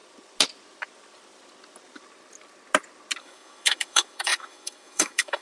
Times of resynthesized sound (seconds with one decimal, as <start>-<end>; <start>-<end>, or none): 3.2-5.4